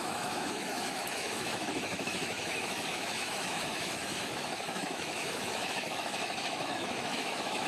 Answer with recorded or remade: remade